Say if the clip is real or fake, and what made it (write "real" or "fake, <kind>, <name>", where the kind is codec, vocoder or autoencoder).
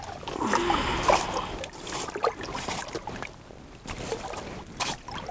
real